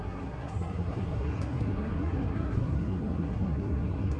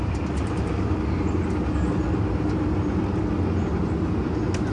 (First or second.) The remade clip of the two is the first